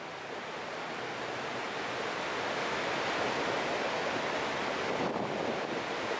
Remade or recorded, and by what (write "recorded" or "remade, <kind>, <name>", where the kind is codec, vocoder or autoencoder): recorded